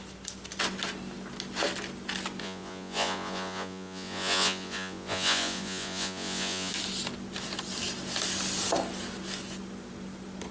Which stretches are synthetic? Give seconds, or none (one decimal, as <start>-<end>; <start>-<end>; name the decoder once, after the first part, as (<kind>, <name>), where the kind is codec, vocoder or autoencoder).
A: 2.4-6.7 (vocoder, Vocos)